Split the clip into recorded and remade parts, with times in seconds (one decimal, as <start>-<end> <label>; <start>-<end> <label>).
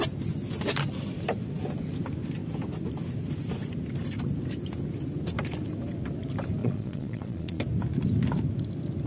0.0-6.6 recorded; 6.6-7.6 remade; 7.6-9.1 recorded